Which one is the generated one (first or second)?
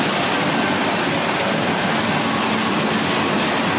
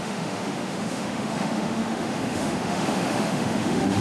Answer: second